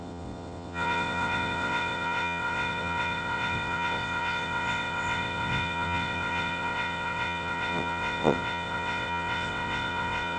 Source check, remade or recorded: remade